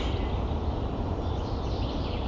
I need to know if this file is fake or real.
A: real